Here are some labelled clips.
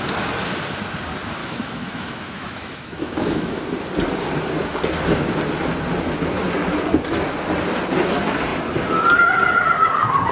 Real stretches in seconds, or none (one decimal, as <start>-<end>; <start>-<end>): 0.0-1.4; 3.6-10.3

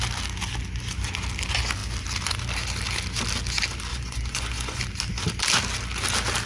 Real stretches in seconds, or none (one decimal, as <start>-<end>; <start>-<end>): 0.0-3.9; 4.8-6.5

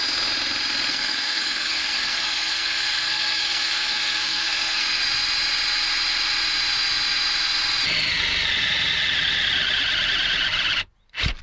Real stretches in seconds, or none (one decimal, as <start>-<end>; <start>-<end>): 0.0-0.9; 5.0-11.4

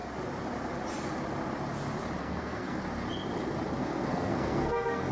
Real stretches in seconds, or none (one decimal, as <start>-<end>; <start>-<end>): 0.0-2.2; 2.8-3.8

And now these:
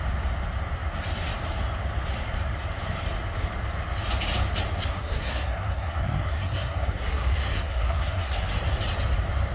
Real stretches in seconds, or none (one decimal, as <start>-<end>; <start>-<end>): 0.0-4.8; 8.5-9.5